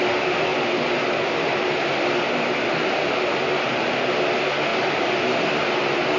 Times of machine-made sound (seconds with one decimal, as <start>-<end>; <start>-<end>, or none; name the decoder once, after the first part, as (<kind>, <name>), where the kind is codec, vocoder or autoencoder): none